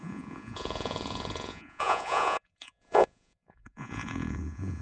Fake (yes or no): yes